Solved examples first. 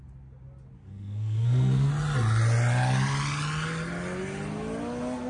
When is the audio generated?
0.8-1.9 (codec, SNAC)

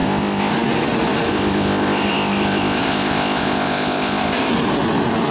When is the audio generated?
0.0-0.5 (codec, ZipCodec); 1.3-4.5

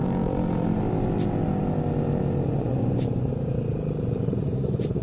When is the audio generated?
2.5-3.3 (vocoder, Vocos); 4.2-5.0